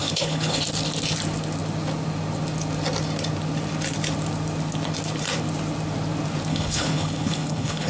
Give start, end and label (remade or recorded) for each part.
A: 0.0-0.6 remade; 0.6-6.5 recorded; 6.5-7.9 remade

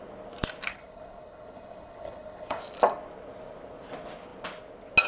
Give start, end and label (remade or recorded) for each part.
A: 0.0-0.7 recorded; 0.7-2.6 remade; 2.6-5.1 recorded

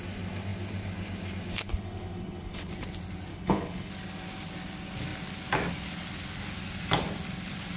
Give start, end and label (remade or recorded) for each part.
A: 0.0-1.7 recorded; 1.7-2.7 remade; 2.7-3.3 recorded; 3.3-3.9 remade; 3.9-7.8 recorded

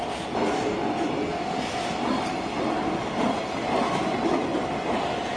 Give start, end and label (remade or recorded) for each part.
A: 0.0-5.4 recorded